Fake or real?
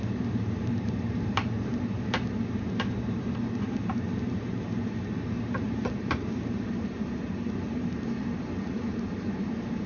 fake